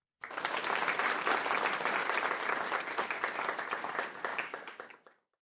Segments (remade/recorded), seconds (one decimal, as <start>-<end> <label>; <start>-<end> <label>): 0.0-4.3 recorded; 4.3-5.4 remade